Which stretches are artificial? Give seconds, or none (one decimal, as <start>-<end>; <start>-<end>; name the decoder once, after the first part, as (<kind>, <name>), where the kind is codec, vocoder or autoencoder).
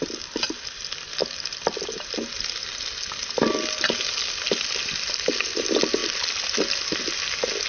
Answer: none